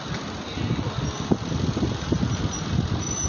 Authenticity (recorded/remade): recorded